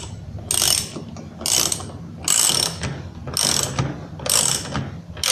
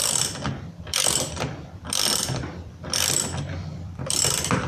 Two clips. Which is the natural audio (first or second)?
first